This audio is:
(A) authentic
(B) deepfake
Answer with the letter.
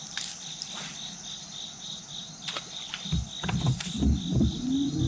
B